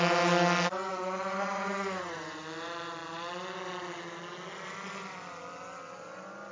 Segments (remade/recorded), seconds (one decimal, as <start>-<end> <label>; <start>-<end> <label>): 0.0-0.9 recorded; 0.9-2.4 remade; 2.4-6.5 recorded